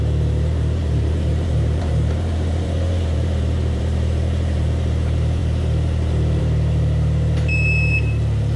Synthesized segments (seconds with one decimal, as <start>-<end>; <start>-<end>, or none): 0.0-8.6